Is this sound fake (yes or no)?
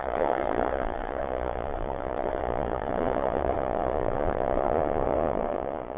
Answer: yes